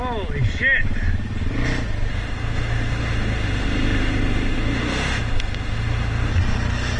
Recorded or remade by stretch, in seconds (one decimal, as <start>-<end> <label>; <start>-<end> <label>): 0.0-2.1 recorded; 2.1-6.3 remade; 6.3-7.0 recorded